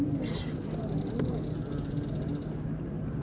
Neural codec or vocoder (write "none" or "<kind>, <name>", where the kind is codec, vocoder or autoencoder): none